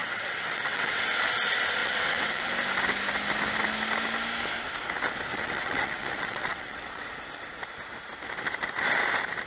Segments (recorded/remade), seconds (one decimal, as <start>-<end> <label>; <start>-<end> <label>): 0.0-1.2 remade; 1.2-1.8 recorded; 1.8-2.5 remade; 2.5-5.3 recorded; 5.3-7.1 remade; 7.1-9.5 recorded